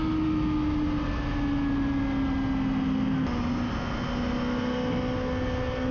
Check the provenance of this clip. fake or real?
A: real